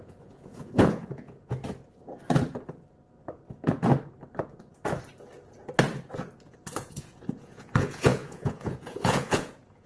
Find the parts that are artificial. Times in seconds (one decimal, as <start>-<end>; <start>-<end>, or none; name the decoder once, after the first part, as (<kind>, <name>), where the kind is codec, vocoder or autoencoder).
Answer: 0.0-1.6 (vocoder, Vocos); 6.5-9.9